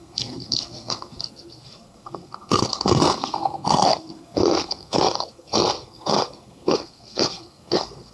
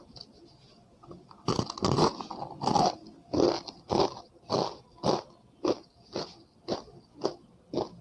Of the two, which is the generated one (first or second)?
first